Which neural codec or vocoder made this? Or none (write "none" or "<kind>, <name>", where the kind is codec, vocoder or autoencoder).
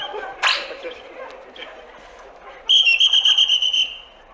none